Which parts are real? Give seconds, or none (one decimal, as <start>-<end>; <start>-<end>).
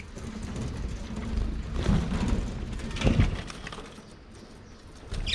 0.0-5.3